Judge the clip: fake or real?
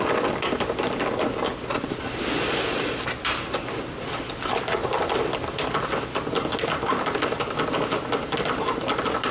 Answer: real